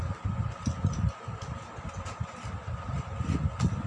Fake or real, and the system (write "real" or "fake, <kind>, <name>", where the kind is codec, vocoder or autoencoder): real